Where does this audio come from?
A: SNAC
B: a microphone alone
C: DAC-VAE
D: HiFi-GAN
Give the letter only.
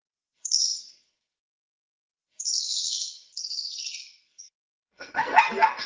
A